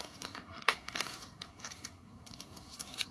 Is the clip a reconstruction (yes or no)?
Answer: yes